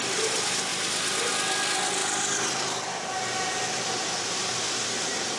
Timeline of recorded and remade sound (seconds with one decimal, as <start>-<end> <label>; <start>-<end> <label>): 0.0-5.4 recorded